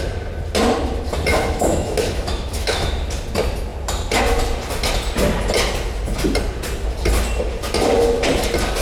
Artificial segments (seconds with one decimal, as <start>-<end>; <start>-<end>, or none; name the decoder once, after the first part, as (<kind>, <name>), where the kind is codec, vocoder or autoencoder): 1.3-2.9 (autoencoder, DAC-VAE)